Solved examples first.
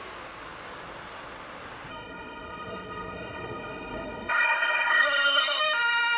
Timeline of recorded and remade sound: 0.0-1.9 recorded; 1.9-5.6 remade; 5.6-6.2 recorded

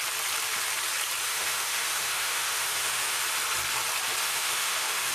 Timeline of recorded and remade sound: 0.0-1.2 recorded; 1.2-3.2 remade; 3.2-4.2 recorded; 4.2-5.1 remade